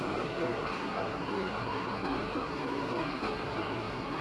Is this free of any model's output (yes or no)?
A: no